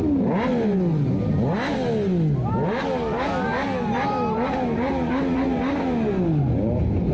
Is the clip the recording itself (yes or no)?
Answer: yes